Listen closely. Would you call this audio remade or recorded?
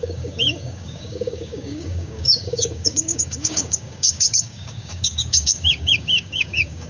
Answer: remade